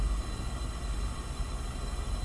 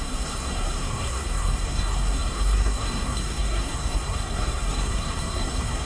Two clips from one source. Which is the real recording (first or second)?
first